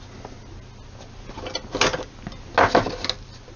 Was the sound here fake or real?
real